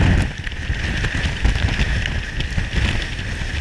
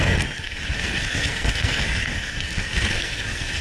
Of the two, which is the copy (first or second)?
second